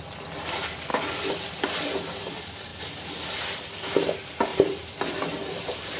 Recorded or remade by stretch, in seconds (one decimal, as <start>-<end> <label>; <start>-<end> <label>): 0.0-0.9 recorded; 0.9-1.6 remade; 1.6-4.5 recorded; 4.5-6.0 remade